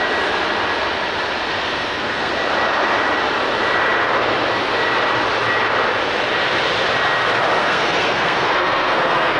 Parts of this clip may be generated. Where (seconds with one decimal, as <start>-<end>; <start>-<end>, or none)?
1.5-2.3; 7.6-9.4